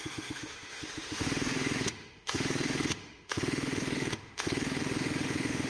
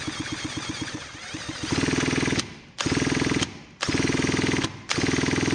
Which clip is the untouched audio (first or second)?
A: second